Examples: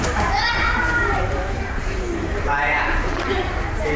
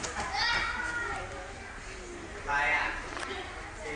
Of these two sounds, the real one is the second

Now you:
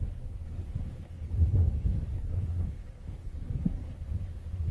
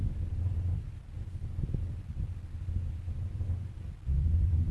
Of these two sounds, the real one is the second